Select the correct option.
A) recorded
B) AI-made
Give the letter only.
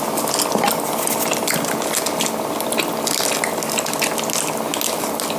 A